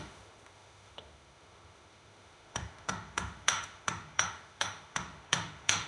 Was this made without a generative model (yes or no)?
no